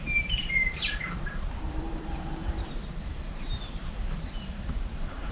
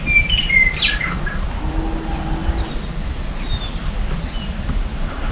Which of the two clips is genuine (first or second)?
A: second